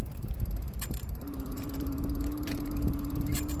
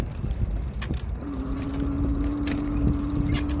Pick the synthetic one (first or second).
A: first